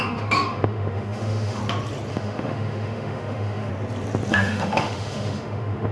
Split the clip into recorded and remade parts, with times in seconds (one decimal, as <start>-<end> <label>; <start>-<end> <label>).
0.0-1.6 remade; 1.6-2.1 recorded; 2.1-3.7 remade; 3.7-4.3 recorded; 4.3-5.9 remade